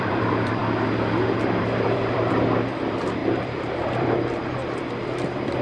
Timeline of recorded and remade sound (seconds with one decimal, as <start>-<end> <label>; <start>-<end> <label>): 0.0-0.6 remade; 0.6-1.6 recorded; 1.6-5.6 remade